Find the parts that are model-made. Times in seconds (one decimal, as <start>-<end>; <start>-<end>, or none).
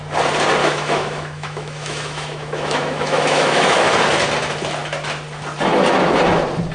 0.6-3.9